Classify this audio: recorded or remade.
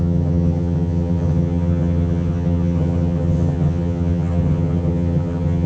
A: remade